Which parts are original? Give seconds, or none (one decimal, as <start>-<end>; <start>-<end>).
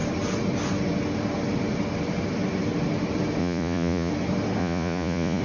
0.0-3.4; 4.1-4.6